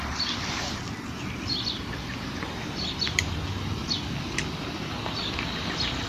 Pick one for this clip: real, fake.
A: real